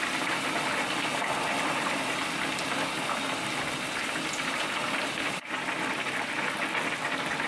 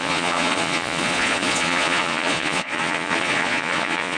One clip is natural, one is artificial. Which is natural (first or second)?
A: first